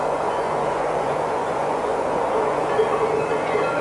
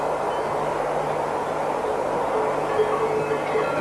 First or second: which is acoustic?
second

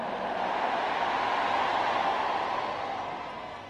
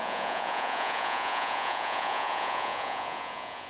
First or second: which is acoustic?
first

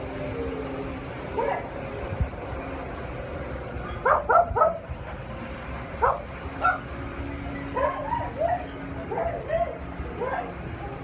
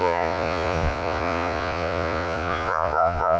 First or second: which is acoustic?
first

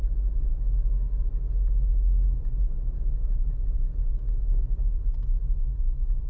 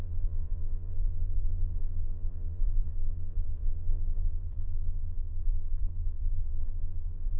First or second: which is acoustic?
first